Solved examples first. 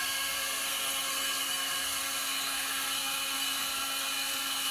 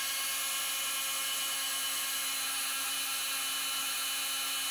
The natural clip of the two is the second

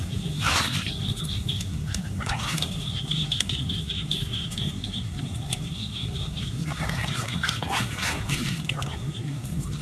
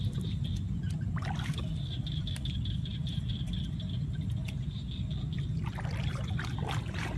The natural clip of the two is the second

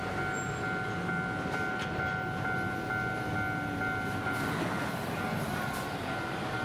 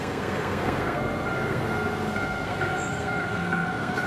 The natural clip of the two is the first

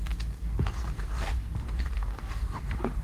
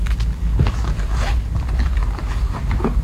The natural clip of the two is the second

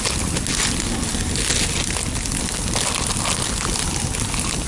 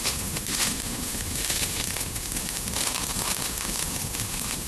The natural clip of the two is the first